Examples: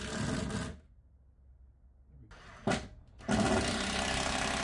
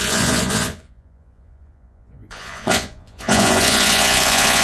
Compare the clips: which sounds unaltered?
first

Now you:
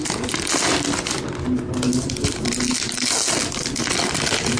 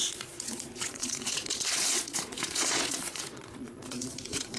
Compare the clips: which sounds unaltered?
first